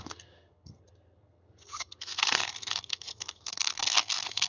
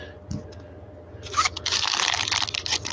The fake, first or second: first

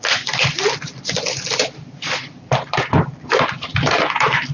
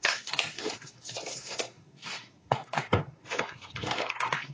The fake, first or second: second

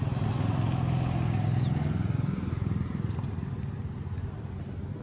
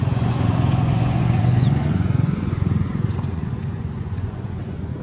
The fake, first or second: second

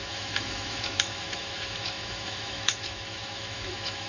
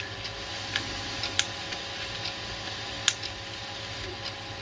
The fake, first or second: first